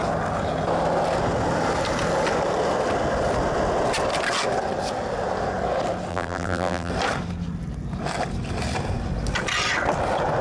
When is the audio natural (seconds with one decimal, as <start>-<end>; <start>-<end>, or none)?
0.0-6.1; 6.9-10.4